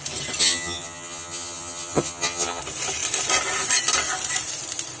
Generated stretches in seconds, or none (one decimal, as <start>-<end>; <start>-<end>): 0.4-2.6